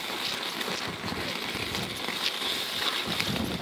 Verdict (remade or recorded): recorded